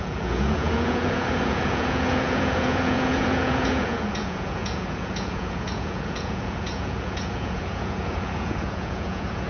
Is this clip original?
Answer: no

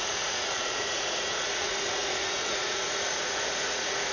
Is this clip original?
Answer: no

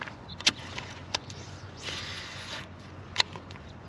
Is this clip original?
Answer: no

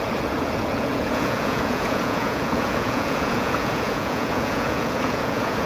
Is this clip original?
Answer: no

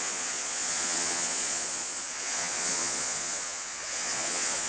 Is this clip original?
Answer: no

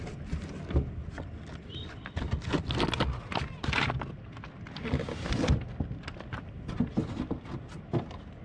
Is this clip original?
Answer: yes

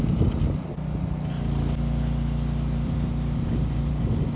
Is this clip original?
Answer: yes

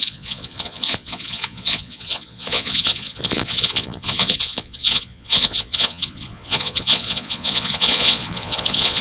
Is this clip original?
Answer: no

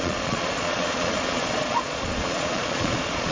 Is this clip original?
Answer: no